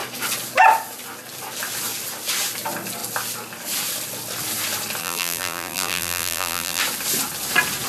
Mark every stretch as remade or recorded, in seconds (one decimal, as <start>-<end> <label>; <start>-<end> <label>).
0.0-5.0 recorded; 5.0-6.8 remade; 6.8-7.9 recorded